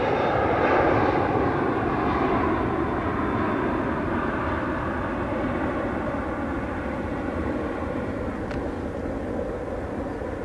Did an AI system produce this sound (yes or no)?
no